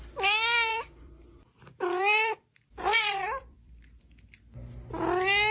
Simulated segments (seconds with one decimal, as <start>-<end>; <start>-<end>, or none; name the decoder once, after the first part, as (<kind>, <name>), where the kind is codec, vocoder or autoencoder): 0.7-4.0 (vocoder, BigVGAN v2)